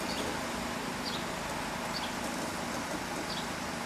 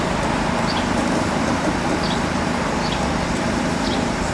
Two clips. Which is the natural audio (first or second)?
first